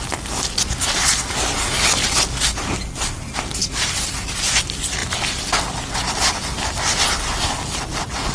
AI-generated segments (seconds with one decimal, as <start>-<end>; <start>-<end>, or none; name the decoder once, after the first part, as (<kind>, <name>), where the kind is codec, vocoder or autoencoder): none